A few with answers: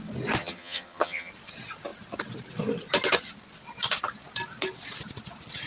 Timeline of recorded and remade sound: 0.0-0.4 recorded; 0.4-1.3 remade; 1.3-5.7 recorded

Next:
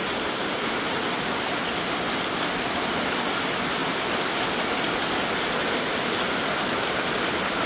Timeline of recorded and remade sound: 0.0-0.7 remade; 0.7-7.7 recorded

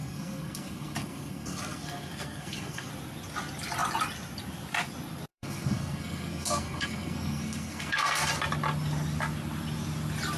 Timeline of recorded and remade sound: 0.0-2.9 remade; 2.9-5.3 recorded; 5.3-8.3 remade; 8.3-10.4 recorded

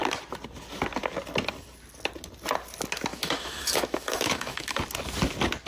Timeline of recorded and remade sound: 0.0-3.1 recorded; 3.1-4.8 remade; 4.8-5.7 recorded

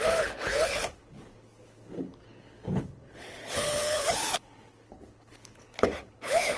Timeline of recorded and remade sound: 0.0-6.6 remade

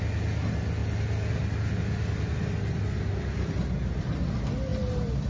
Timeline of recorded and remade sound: 0.0-5.3 recorded

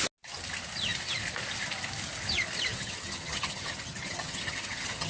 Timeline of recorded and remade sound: 0.0-2.7 recorded; 2.7-5.1 remade

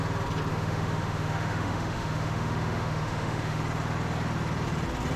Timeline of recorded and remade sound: 0.0-0.5 recorded; 0.5-3.6 remade; 3.6-5.2 recorded